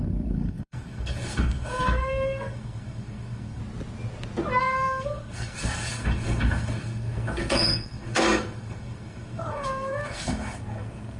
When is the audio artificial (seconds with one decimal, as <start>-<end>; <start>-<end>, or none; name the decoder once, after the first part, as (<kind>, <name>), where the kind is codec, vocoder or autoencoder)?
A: 0.0-3.6 (codec, SNAC); 4.6-11.2

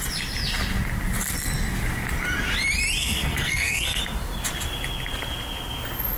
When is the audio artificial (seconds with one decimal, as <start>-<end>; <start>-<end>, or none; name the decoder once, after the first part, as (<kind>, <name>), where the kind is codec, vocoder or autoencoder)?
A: 3.0-4.0 (codec, SNAC)

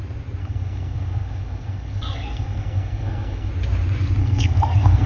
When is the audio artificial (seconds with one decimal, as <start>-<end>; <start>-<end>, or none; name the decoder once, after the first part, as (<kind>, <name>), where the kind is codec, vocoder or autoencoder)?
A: 0.4-3.5 (codec, SNAC); 4.2-5.1

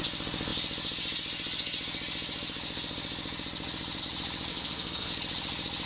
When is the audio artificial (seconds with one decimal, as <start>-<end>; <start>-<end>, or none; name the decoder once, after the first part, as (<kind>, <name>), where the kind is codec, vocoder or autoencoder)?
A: 4.5-5.1 (codec, SNAC)

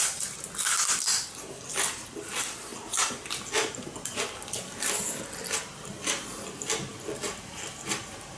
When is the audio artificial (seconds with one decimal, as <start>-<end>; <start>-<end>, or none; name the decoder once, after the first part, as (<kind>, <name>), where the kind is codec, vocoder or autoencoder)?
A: none

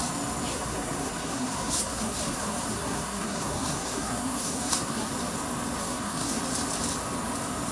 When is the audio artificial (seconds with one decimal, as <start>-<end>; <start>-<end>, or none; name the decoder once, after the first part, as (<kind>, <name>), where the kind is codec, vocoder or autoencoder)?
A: 0.5-5.1 (codec, SNAC); 5.8-6.4

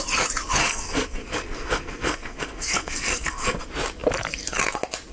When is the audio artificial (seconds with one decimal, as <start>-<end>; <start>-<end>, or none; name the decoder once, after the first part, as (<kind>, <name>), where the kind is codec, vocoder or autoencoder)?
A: 0.6-3.6 (codec, SNAC)

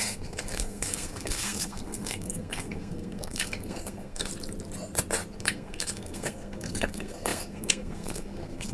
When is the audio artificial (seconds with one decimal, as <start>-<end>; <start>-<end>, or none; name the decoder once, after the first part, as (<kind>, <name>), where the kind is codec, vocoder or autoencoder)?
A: 0.0-4.3 (codec, SNAC); 5.4-8.7